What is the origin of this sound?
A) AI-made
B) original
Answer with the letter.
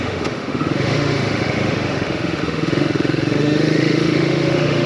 A